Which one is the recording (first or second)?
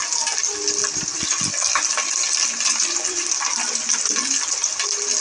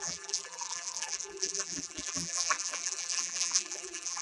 first